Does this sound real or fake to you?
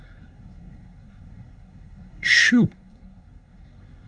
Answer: fake